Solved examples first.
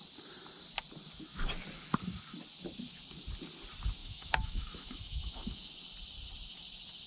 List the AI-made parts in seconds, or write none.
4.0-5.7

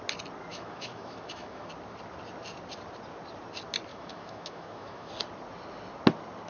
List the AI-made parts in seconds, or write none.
0.5-1.7; 3.9-5.1

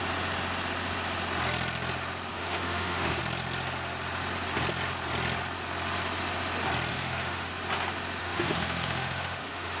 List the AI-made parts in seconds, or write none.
2.3-3.2; 6.9-7.5; 8.2-9.8

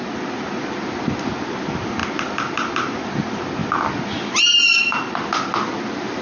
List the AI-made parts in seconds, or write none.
none